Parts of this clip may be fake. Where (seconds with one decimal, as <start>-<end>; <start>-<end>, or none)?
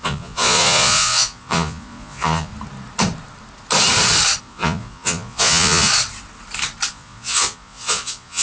0.0-2.5; 4.4-5.9; 6.9-8.4